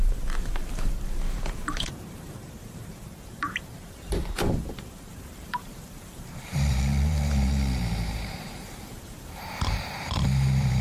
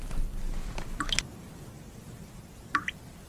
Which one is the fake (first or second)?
first